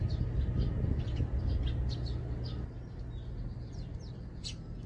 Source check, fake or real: real